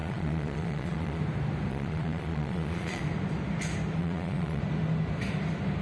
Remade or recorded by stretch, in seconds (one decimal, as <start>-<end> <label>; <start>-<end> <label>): 0.0-1.2 remade; 1.2-1.7 recorded; 1.7-3.0 remade; 3.0-4.0 recorded; 4.0-4.6 remade; 4.6-5.8 recorded